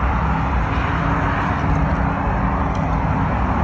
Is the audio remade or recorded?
recorded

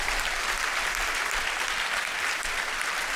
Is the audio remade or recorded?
remade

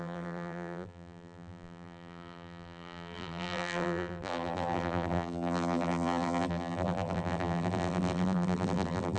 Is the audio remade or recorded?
remade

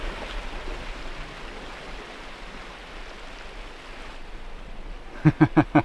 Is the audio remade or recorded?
recorded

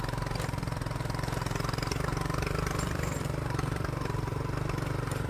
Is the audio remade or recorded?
remade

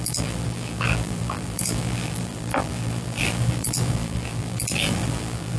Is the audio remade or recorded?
remade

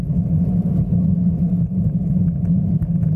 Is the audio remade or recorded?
recorded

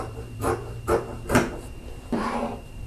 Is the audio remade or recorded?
remade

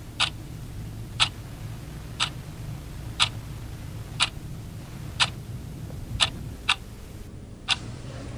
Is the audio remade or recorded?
remade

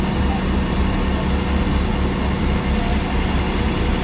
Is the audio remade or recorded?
recorded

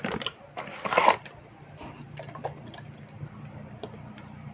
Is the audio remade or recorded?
remade